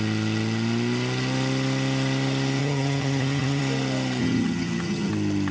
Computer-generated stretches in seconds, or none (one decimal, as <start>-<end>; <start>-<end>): 2.6-3.6; 4.2-5.1